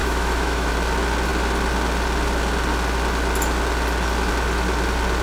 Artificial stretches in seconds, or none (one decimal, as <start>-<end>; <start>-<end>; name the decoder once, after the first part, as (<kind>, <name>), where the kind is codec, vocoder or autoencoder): 0.0-0.7 (autoencoder, DAC-VAE)